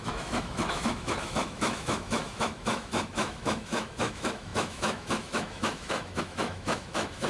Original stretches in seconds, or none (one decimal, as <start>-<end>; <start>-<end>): none

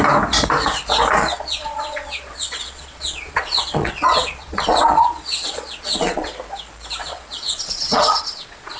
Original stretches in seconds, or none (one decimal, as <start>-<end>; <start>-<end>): 0.0-1.2; 6.3-7.0

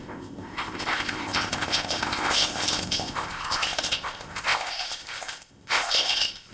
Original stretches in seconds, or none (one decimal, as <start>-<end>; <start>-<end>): none

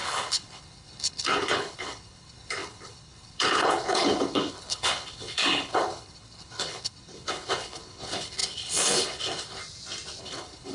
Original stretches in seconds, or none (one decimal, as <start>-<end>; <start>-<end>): 9.6-10.2

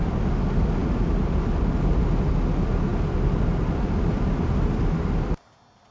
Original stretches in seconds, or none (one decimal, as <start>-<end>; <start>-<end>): 0.0-5.9

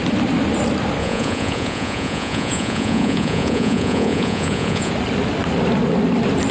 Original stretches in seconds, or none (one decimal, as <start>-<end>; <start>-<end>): 0.0-1.0; 4.9-6.5

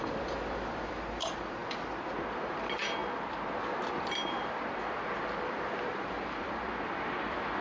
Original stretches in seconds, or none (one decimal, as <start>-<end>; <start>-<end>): 3.0-3.9

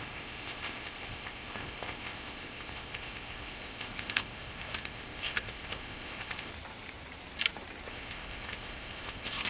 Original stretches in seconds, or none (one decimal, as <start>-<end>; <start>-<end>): 6.5-7.9